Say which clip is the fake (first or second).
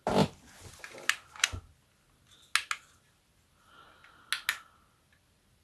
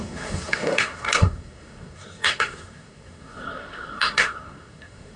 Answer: second